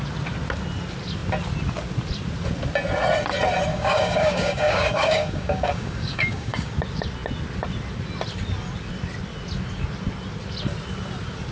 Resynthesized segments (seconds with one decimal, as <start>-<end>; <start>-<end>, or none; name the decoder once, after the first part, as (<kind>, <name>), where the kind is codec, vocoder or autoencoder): 3.7-6.7 (codec, DAC)